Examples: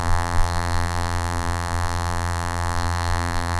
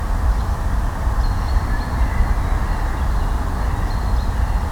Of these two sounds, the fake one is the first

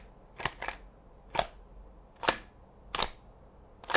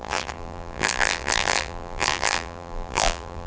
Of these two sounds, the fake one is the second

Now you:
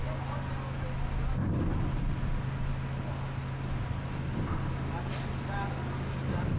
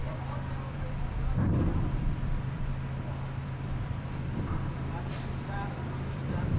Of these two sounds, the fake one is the second